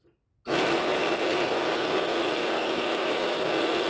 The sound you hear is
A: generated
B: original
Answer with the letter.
B